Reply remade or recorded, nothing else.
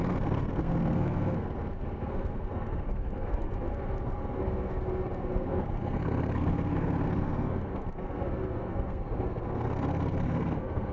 remade